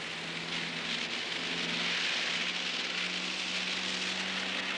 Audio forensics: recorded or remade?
recorded